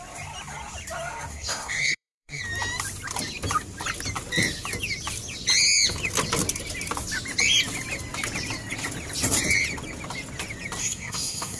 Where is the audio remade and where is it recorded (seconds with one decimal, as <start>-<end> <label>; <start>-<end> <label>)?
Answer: 0.0-1.3 recorded; 1.3-2.4 remade; 2.4-10.8 recorded; 10.8-11.6 remade

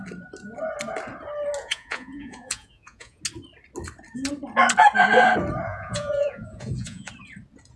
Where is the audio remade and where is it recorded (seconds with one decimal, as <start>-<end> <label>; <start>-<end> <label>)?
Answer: 0.0-1.6 recorded; 1.6-3.2 remade; 3.2-5.7 recorded; 5.7-7.1 remade; 7.1-7.8 recorded

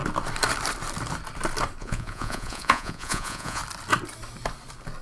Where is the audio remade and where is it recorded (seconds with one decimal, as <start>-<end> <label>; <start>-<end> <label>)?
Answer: 0.0-1.8 recorded; 1.8-3.6 remade; 3.6-5.0 recorded